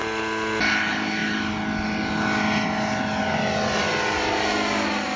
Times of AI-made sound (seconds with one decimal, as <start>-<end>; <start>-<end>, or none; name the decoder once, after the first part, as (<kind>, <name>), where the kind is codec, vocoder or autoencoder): none